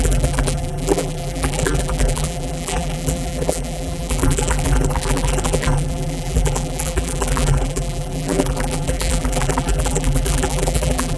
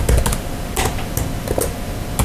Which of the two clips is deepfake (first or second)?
first